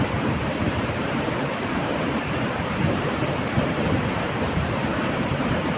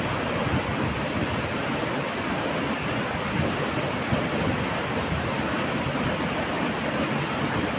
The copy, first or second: first